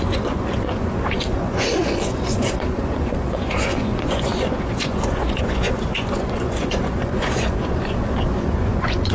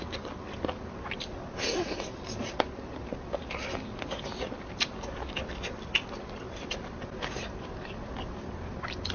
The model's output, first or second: first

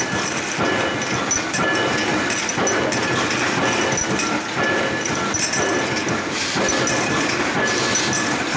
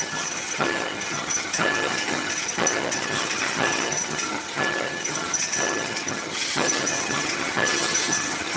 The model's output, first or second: second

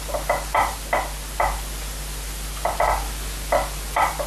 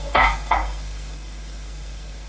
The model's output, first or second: second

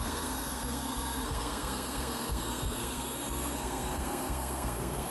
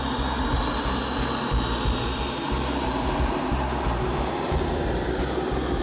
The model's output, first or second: first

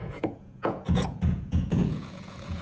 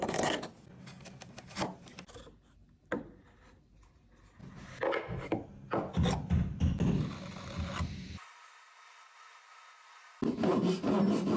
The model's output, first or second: first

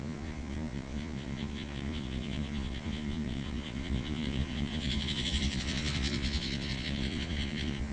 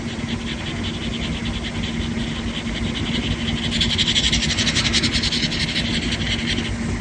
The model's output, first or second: first